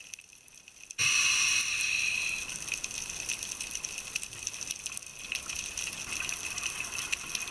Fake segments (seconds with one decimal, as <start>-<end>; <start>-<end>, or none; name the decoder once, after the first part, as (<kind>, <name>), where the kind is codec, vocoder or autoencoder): none